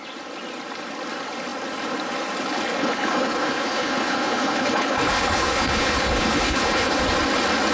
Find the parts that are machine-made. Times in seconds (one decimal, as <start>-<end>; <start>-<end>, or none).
2.8-7.0